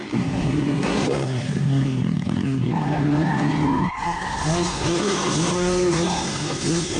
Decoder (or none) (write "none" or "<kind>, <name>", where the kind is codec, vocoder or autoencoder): codec, SNAC